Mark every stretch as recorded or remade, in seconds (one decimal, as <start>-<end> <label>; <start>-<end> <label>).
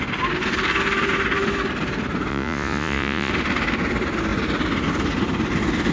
0.0-2.3 recorded; 2.3-3.3 remade; 3.3-5.9 recorded